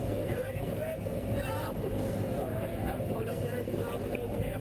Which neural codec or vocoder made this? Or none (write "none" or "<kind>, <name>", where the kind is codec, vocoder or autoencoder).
codec, SNAC